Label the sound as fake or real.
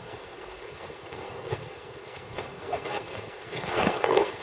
fake